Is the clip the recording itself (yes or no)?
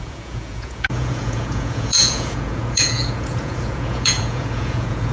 no